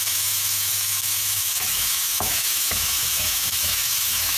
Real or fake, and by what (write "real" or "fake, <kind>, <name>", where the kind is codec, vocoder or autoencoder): fake, autoencoder, DAC-VAE